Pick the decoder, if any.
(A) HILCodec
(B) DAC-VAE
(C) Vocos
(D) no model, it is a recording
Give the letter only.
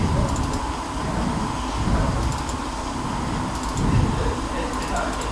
D